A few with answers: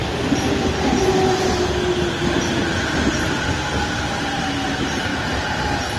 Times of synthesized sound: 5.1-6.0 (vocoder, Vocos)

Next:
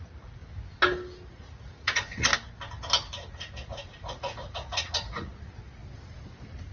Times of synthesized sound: 0.0-0.4 (vocoder, Vocos); 1.3-2.3; 3.3-5.8

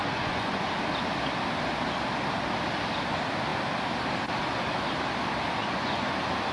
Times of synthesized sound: 0.0-0.7 (vocoder, Vocos); 5.6-6.1

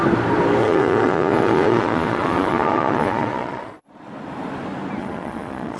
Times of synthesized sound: 0.6-4.1 (vocoder, Vocos); 5.0-5.8

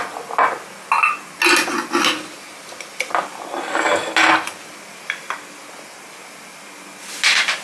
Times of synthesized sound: none

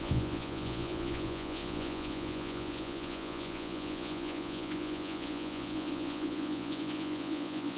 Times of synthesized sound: 0.0-7.8 (vocoder, Vocos)

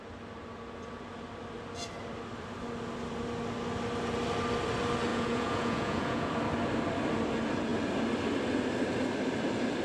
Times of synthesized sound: 5.1-6.3 (vocoder, Vocos)

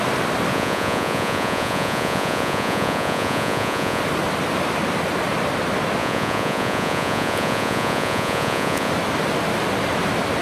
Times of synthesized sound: 0.5-4.0 (vocoder, Vocos); 6.0-8.9